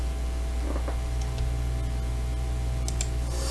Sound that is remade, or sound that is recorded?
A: recorded